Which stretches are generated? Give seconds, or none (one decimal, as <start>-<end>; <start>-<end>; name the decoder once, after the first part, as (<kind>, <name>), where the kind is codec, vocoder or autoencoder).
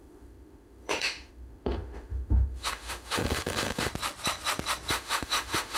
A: 0.0-3.9 (autoencoder, DAC-VAE); 4.9-5.8